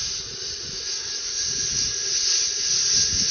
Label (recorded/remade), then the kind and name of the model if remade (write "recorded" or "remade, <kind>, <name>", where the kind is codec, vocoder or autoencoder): recorded